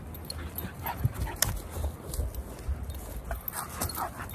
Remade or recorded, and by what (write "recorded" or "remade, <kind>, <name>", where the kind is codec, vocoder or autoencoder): recorded